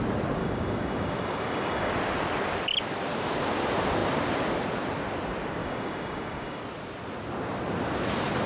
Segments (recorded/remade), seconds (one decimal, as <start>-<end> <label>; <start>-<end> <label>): 0.0-0.4 recorded; 0.4-1.9 remade; 1.9-5.6 recorded; 5.6-6.6 remade; 6.6-8.5 recorded